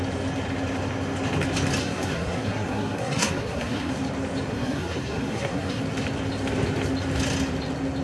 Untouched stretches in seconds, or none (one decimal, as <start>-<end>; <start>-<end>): 0.0-1.8; 3.9-4.5; 5.8-8.0